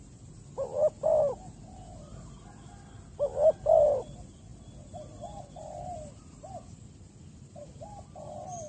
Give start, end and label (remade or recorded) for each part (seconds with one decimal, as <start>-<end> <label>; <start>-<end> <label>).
0.0-8.7 recorded